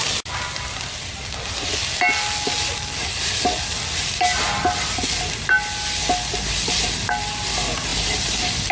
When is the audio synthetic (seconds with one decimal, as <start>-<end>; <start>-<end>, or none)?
none